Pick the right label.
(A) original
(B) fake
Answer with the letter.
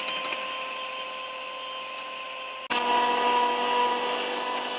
A